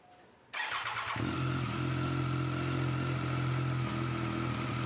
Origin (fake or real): real